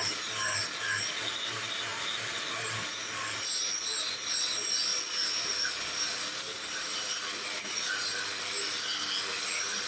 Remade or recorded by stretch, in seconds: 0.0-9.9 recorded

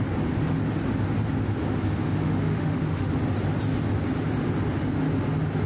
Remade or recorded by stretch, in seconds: 0.0-2.2 recorded; 2.2-3.1 remade; 3.1-5.7 recorded

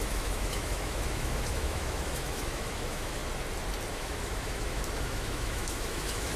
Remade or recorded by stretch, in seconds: 0.0-3.2 remade; 3.2-3.9 recorded; 3.9-6.4 remade

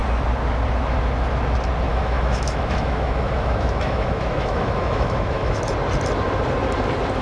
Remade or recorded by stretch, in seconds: 0.0-1.9 recorded; 1.9-5.6 remade; 5.6-7.2 recorded

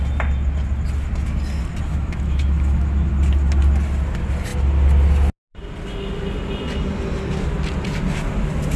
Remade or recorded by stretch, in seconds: 0.0-1.9 recorded; 1.9-3.1 remade; 3.1-8.8 recorded

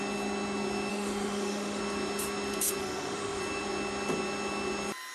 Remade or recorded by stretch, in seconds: 0.0-0.9 recorded; 0.9-1.8 remade; 1.8-2.8 recorded; 2.8-3.4 remade; 3.4-5.1 recorded

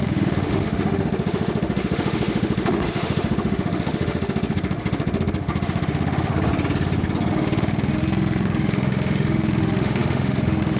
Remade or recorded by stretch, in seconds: 0.0-6.3 remade; 6.3-7.3 recorded; 7.3-10.8 remade